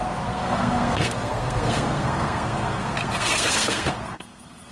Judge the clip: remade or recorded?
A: remade